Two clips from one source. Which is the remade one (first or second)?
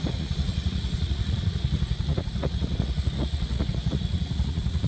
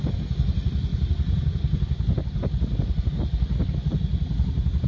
first